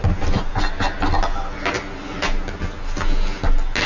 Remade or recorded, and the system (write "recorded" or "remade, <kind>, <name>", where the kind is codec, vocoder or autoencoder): recorded